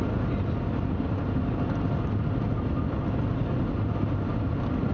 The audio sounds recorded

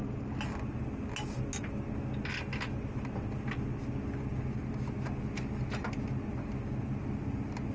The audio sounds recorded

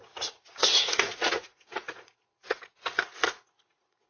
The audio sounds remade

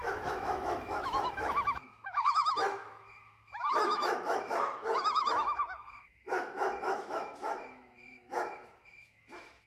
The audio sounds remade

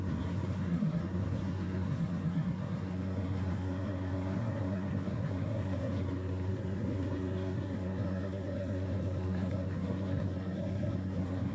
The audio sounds remade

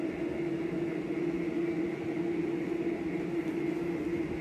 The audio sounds recorded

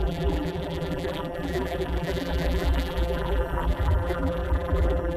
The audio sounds remade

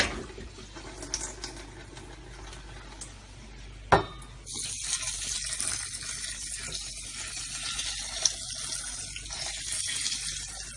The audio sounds recorded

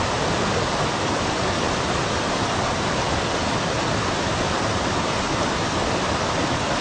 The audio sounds recorded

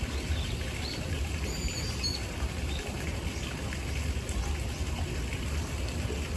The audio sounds recorded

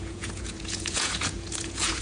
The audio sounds remade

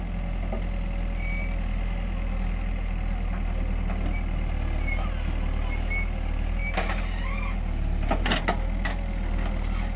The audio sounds recorded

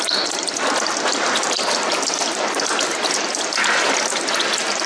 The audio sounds recorded